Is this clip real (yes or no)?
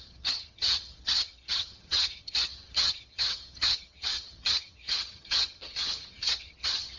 no